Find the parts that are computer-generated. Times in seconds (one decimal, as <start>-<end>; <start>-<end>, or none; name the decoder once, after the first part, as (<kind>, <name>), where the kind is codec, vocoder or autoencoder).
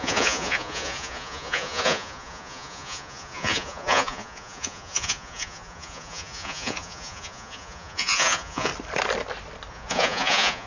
0.0-8.7 (vocoder, Vocos); 9.7-10.7